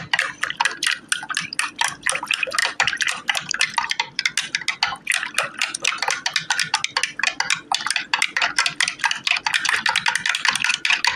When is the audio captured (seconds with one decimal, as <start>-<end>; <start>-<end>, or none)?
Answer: 0.0-2.6; 4.2-11.2